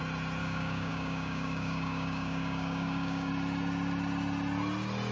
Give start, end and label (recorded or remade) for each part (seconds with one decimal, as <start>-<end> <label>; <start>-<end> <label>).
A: 0.0-0.4 recorded; 0.4-3.3 remade; 3.3-5.1 recorded